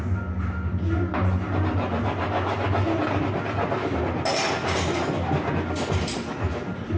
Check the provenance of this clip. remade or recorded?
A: recorded